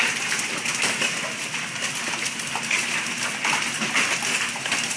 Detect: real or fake real